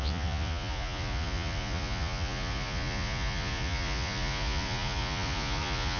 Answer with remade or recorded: remade